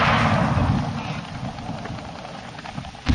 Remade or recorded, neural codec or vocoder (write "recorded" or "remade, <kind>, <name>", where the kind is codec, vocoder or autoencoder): remade, vocoder, BigVGAN v2